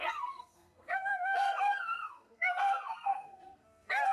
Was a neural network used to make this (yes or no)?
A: yes